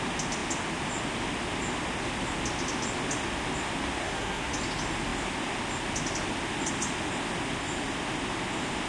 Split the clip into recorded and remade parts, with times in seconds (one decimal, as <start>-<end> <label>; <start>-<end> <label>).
0.0-4.0 recorded; 4.0-4.5 remade; 4.5-8.9 recorded